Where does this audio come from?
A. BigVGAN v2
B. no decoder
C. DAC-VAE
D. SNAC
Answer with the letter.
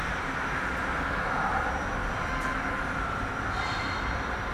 B